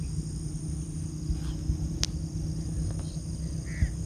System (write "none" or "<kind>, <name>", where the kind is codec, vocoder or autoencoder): none